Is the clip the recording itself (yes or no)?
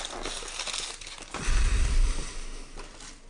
yes